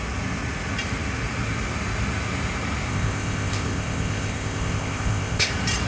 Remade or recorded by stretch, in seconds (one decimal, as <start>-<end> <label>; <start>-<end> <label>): 0.0-2.9 recorded; 2.9-5.5 remade; 5.5-5.9 recorded